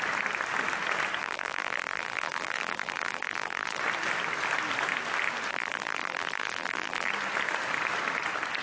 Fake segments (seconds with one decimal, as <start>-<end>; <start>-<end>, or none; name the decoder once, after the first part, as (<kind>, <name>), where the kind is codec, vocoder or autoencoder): 1.2-3.8 (vocoder, BigVGAN v2); 5.5-7.1